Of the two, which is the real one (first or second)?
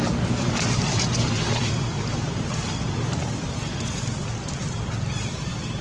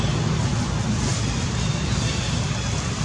second